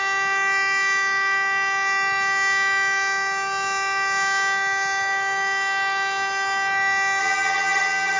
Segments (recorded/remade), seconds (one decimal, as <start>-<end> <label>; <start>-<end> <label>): 0.0-7.2 recorded; 7.2-8.2 remade